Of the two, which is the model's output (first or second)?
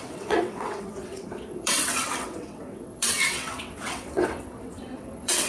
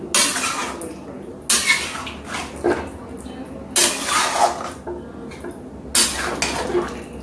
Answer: first